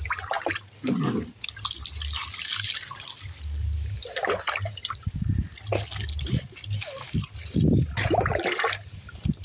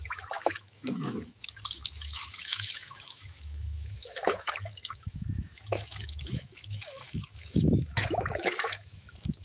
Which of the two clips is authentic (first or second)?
first